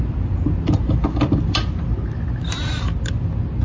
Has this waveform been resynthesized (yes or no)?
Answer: no